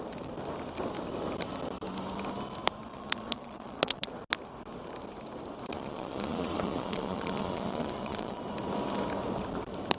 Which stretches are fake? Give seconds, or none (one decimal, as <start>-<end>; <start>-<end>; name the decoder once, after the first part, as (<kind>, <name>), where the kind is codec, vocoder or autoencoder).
2.9-4.1 (vocoder, Vocos); 5.7-8.4